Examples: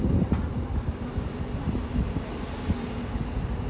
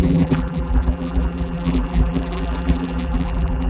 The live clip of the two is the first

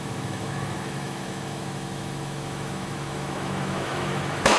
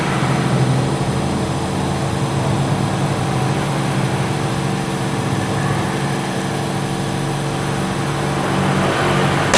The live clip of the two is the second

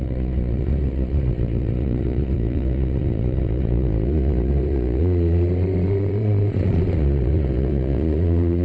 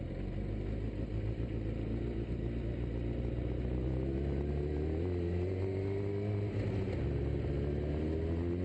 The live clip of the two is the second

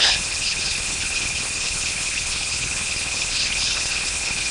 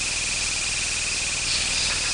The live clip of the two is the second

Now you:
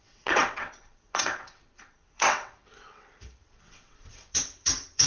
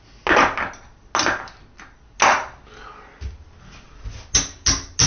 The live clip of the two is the second